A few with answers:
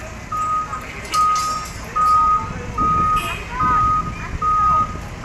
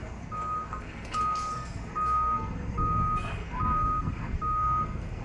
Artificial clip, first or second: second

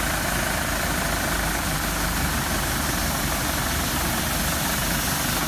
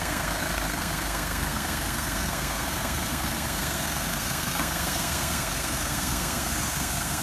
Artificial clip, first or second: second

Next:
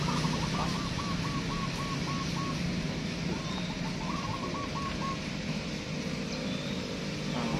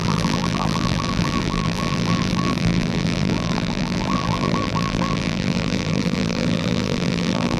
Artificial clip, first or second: second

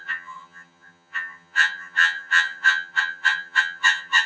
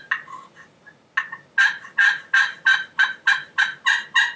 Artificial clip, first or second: first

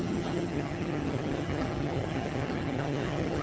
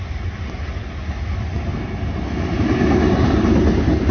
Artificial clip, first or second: first